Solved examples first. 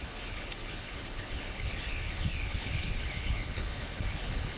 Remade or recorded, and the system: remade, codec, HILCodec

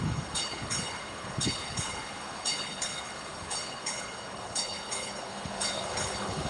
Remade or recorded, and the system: remade, codec, HILCodec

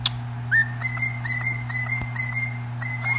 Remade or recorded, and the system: recorded